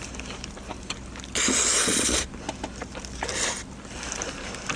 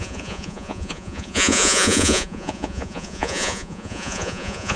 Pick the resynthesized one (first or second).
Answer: second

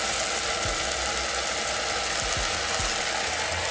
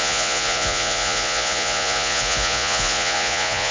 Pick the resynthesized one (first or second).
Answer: second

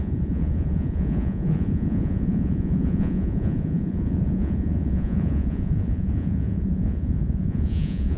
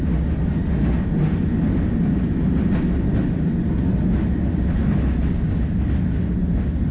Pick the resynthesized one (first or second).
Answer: first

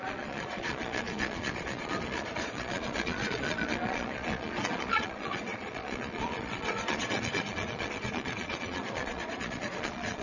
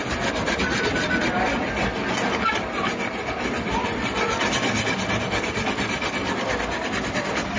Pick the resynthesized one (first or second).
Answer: first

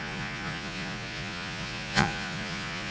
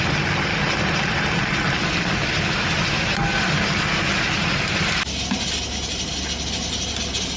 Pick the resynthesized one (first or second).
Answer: first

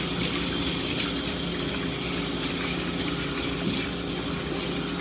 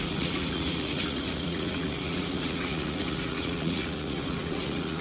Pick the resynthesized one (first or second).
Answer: second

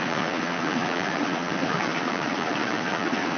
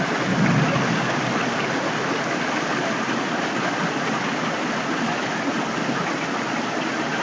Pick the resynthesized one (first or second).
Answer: first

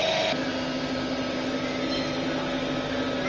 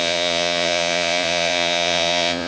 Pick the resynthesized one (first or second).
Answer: second